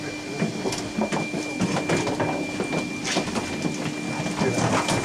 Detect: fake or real real